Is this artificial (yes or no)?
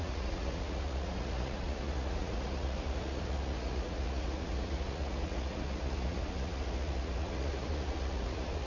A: yes